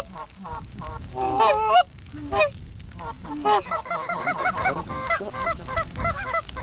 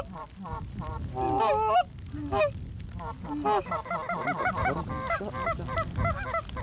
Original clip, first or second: second